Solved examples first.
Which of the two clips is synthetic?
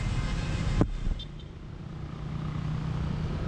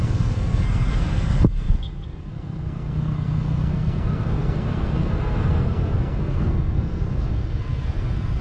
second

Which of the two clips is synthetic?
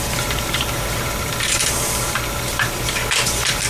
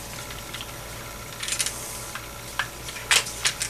first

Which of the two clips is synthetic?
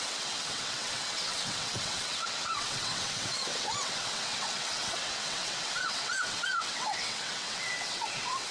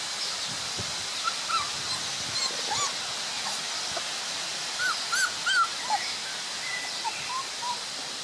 first